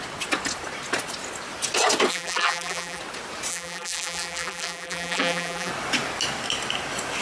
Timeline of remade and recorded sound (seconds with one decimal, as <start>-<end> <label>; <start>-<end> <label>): 0.0-2.1 recorded; 2.1-3.0 remade; 3.0-3.5 recorded; 3.5-5.7 remade; 5.7-7.2 recorded